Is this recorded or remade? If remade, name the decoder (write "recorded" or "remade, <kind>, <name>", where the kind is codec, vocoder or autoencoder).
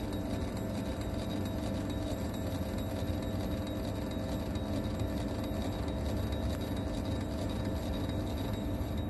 recorded